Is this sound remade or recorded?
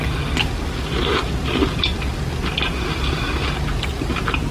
recorded